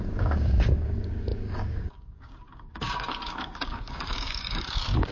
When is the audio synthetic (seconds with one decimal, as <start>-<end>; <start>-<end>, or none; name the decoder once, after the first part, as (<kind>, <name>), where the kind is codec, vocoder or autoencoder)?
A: 0.0-5.1 (codec, DAC)